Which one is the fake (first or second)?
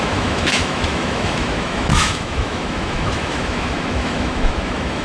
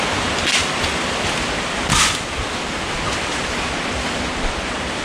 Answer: first